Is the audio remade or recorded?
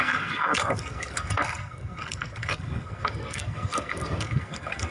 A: remade